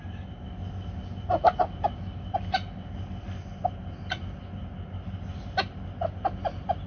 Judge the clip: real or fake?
real